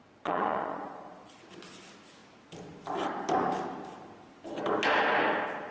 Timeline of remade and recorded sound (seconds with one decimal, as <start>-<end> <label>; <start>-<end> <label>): 0.0-1.3 remade; 1.3-5.7 recorded